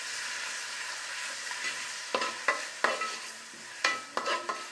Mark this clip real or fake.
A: real